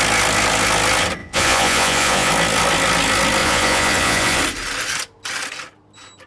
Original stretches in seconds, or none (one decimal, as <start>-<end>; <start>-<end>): 0.0-1.2; 2.3-3.4; 4.4-6.3